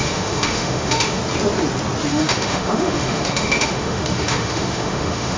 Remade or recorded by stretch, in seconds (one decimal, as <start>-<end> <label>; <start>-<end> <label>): 0.0-1.2 remade; 1.2-2.1 recorded; 2.1-5.4 remade